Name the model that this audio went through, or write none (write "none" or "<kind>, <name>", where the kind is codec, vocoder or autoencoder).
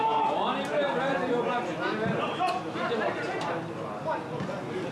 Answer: none